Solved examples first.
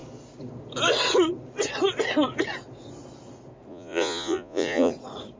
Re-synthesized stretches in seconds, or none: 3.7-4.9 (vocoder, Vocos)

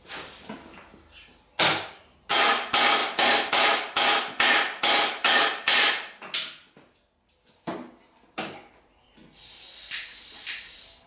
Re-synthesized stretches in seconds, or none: none

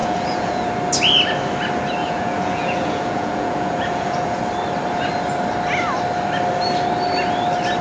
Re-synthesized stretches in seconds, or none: 0.0-0.6 (vocoder, Vocos); 2.0-4.4

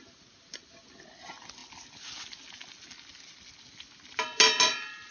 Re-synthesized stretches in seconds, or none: none

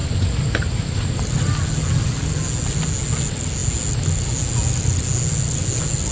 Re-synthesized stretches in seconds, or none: none